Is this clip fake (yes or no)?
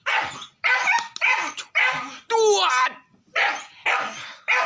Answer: no